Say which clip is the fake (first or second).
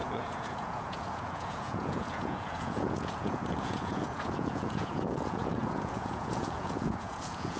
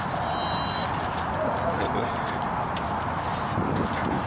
first